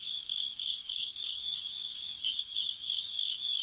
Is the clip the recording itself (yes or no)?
no